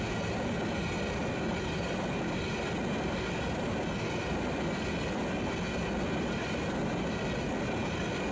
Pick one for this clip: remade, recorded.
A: recorded